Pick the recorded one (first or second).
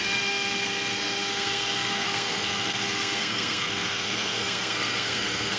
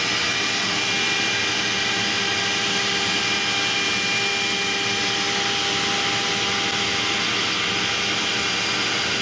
second